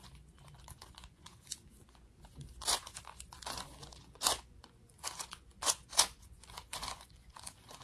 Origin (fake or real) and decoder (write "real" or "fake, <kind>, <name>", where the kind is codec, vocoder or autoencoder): fake, vocoder, Vocos